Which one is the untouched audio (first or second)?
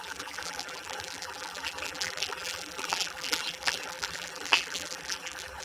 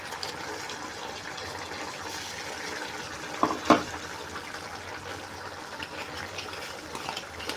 second